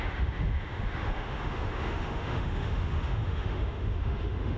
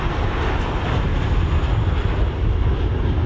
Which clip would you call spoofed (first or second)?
first